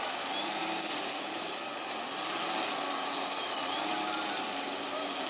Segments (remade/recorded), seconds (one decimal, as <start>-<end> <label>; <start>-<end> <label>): 0.0-5.3 recorded